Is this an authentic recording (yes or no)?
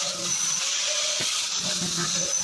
no